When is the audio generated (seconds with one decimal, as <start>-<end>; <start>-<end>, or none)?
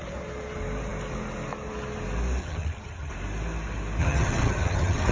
2.4-3.1; 4.0-5.1